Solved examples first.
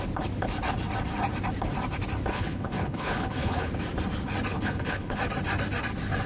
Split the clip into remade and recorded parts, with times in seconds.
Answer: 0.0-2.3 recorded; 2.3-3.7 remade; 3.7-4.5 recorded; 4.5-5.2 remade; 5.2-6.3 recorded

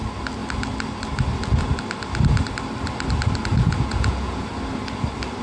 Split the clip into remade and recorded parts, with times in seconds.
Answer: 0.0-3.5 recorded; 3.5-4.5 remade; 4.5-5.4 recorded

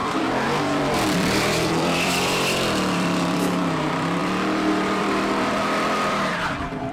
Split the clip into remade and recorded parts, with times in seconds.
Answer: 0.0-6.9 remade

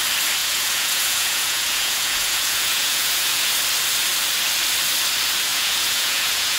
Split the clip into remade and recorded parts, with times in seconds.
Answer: 0.0-0.4 recorded; 0.4-3.5 remade; 3.5-5.5 recorded; 5.5-6.6 remade

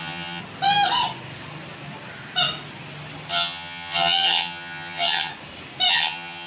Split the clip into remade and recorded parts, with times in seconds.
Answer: 0.0-0.4 remade; 0.4-3.3 recorded; 3.3-5.3 remade; 5.3-5.9 recorded; 5.9-6.5 remade

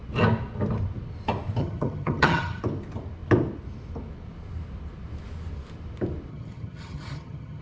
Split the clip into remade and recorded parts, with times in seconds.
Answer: 0.0-1.6 recorded; 1.6-2.6 remade; 2.6-6.3 recorded; 6.3-7.6 remade